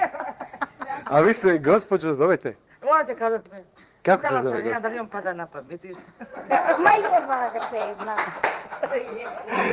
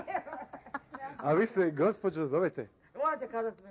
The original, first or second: second